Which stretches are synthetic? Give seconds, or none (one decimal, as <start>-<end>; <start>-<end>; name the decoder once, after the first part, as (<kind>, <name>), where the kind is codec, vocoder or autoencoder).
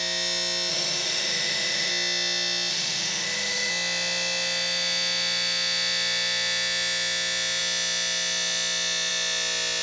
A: 0.7-1.9 (autoencoder, DAC-VAE); 2.7-3.7